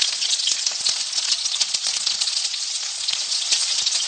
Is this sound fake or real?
fake